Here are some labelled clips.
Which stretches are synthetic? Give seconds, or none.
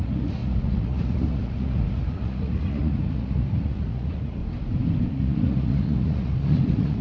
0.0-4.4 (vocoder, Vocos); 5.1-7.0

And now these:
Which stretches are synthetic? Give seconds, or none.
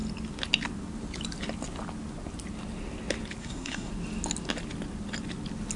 3.4-3.9 (codec, SNAC)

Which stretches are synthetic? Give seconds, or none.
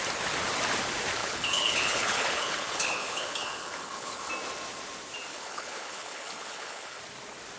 1.2-4.3 (codec, HILCodec); 5.3-7.0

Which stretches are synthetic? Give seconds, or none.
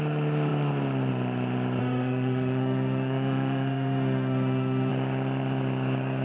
1.8-4.9 (autoencoder, DAC-VAE)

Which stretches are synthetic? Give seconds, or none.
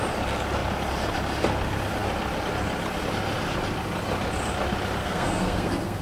5.0-6.0 (codec, SNAC)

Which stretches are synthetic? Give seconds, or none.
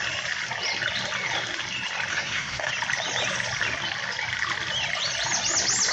2.1-2.7 (codec, SNAC)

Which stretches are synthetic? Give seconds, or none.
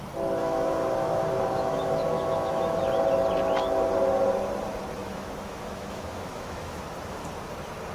0.4-2.8 (autoencoder, DAC-VAE); 5.0-6.8